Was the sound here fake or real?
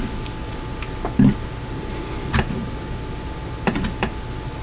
real